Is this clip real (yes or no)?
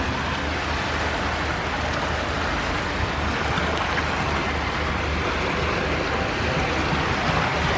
yes